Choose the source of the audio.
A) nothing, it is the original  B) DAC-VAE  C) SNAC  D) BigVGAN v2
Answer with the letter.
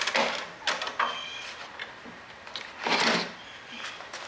A